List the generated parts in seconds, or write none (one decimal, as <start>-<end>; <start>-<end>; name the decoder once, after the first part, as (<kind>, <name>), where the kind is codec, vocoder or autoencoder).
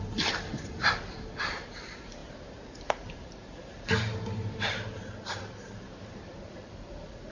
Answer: none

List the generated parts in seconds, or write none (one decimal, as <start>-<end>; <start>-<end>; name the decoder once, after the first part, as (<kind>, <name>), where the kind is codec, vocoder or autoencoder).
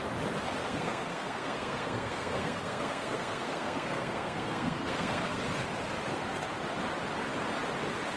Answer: 0.6-5.4 (codec, SNAC)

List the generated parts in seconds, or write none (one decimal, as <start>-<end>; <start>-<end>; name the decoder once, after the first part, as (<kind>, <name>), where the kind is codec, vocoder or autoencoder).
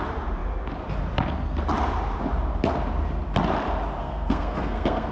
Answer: 4.0-5.1 (codec, SNAC)